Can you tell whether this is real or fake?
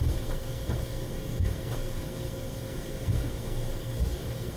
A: fake